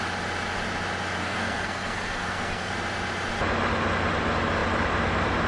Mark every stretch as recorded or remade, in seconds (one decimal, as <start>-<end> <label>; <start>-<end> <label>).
0.0-1.2 recorded; 1.2-2.7 remade; 2.7-5.5 recorded